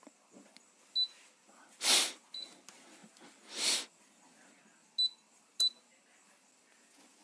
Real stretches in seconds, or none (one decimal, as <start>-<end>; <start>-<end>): 0.0-7.2